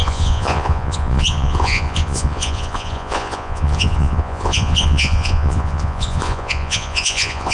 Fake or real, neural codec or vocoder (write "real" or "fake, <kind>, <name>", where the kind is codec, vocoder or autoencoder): fake, vocoder, Vocos